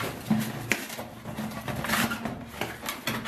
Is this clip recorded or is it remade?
recorded